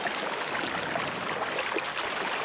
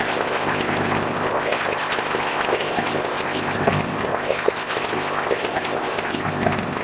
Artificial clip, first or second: second